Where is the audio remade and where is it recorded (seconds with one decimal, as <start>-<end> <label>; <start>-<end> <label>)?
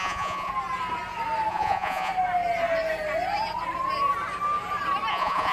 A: 0.0-0.5 remade; 0.5-1.5 recorded; 1.5-2.1 remade; 2.1-5.1 recorded; 5.1-5.5 remade